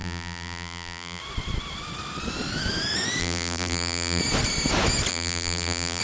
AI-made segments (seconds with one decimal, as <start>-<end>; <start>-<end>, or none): 0.0-1.2; 3.2-4.2; 5.1-6.0